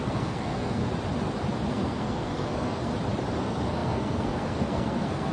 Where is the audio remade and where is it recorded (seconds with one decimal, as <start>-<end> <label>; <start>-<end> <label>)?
0.0-0.8 remade; 0.8-1.7 recorded; 1.7-2.9 remade; 2.9-3.4 recorded; 3.4-5.3 remade